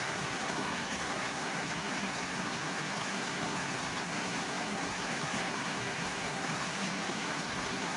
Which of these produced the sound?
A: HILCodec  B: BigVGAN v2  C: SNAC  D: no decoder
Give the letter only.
C